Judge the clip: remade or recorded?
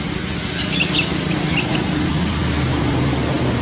recorded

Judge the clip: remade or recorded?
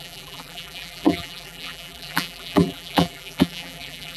remade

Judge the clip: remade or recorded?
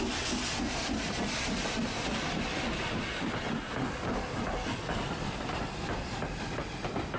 recorded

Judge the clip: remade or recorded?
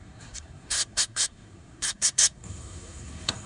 remade